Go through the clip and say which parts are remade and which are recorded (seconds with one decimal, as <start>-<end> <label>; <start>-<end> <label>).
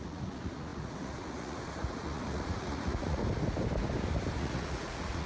0.0-3.2 remade; 3.2-4.4 recorded; 4.4-5.3 remade